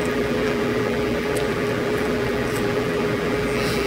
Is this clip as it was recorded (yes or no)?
no